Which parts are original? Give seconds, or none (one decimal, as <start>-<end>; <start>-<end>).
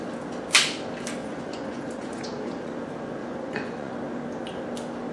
0.0-1.2; 2.7-3.2; 3.9-5.1